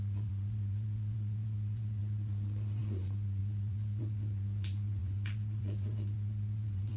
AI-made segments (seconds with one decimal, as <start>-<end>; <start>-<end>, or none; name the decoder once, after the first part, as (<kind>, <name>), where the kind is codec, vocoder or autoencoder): 0.0-7.0 (vocoder, Vocos)